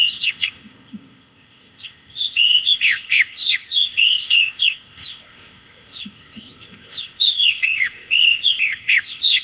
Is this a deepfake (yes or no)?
yes